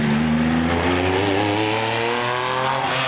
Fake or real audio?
real